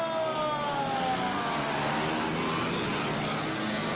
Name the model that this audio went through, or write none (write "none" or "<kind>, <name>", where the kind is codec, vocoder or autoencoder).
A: none